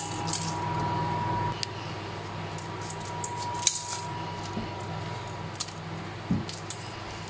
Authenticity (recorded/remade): recorded